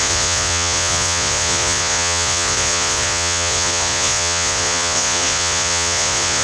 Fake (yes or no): yes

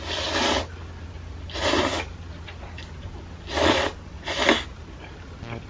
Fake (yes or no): no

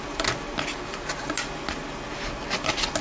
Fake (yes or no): no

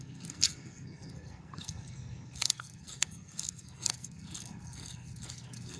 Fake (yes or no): yes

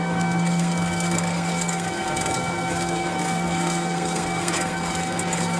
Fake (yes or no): yes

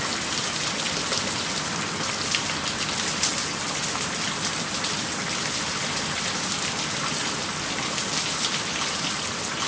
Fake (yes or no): no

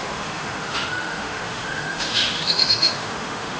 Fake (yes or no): yes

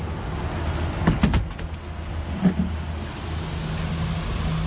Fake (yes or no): no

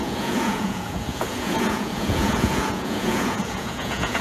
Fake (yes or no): yes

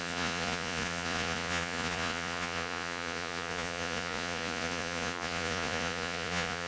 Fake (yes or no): yes